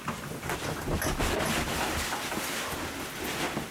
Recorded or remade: recorded